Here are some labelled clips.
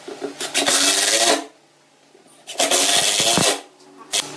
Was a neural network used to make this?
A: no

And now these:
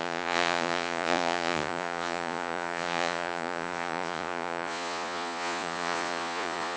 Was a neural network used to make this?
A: yes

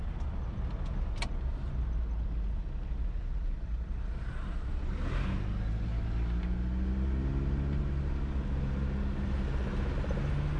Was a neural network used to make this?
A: no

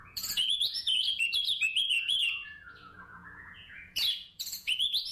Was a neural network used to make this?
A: yes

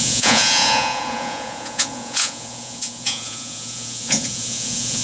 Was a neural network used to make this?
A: yes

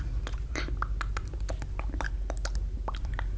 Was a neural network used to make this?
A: no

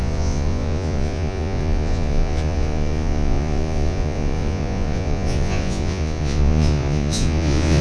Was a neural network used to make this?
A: yes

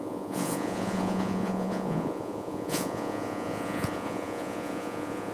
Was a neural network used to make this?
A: yes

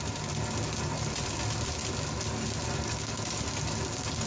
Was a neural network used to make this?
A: no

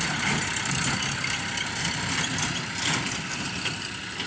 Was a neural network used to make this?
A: no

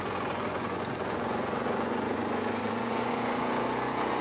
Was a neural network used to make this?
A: yes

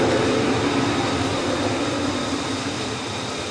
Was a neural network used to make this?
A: no